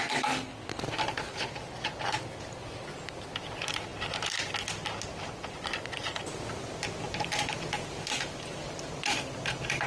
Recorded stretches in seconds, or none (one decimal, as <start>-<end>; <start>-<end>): 0.0-9.9

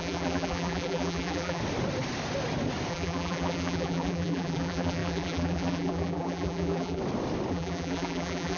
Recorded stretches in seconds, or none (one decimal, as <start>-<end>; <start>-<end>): 1.6-2.9; 7.0-7.5

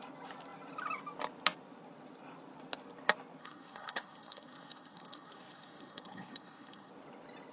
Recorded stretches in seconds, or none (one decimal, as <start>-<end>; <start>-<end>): 0.0-3.4; 6.9-7.5

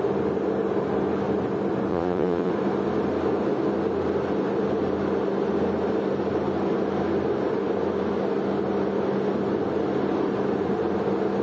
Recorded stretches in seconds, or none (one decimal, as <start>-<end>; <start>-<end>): 0.0-1.9; 2.5-11.4

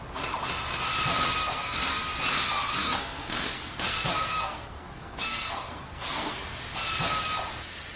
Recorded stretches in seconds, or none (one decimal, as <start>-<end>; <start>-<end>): 0.0-1.4; 2.0-2.8; 6.4-8.0

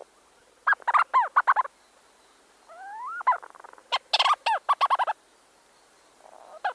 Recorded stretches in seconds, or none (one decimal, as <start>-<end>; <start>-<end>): 0.0-6.7

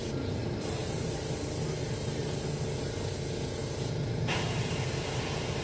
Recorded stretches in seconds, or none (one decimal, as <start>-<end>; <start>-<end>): 1.1-1.8; 2.5-5.6